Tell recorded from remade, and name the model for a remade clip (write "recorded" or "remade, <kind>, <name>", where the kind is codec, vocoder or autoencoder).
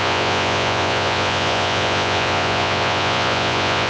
remade, vocoder, Vocos